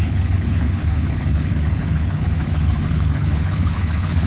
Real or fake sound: fake